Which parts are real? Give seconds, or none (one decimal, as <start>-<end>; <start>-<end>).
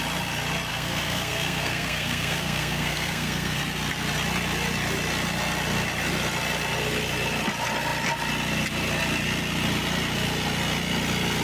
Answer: 0.0-0.7; 3.6-11.4